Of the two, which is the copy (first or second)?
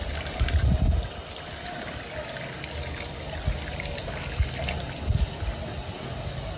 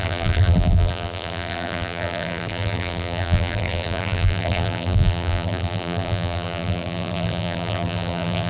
second